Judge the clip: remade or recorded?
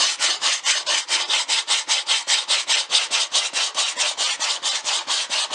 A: remade